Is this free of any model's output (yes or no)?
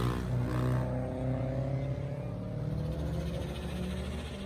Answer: yes